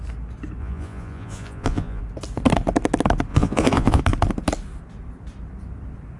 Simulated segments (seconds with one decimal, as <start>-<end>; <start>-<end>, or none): 0.6-2.0; 3.3-4.0